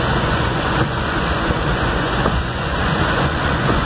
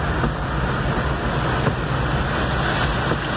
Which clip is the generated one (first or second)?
first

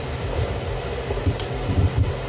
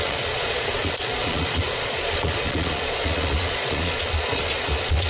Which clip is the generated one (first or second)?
second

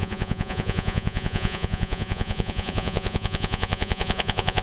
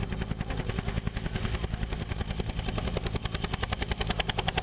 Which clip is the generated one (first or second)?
first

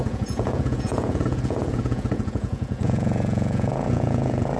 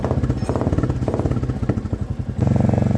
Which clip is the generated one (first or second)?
first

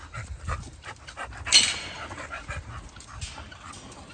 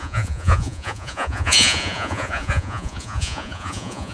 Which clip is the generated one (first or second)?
second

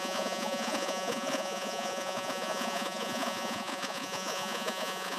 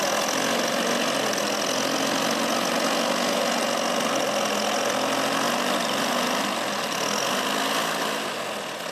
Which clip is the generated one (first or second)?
first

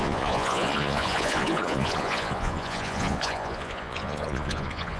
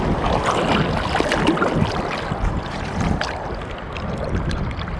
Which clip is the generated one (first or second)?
first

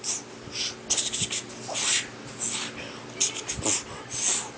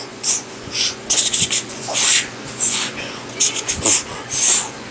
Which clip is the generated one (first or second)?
second